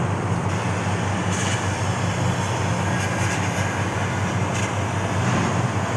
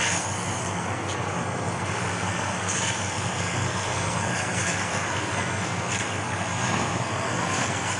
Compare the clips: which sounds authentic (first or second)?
first